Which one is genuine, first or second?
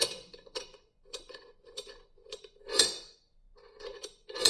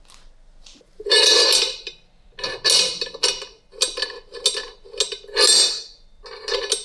second